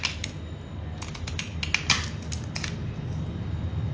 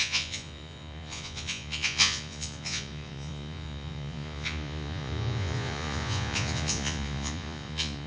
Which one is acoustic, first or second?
first